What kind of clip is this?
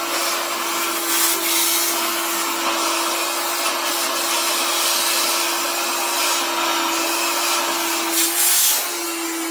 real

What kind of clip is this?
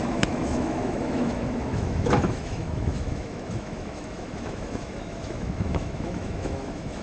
fake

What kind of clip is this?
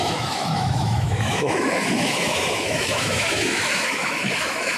fake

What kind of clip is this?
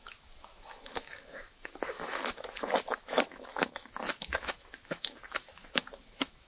fake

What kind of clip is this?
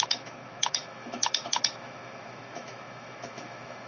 fake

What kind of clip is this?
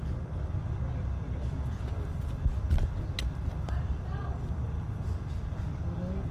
real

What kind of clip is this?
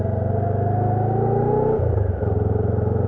real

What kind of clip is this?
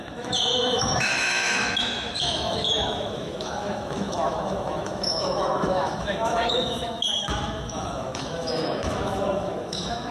fake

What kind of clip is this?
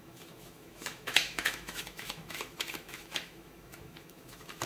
fake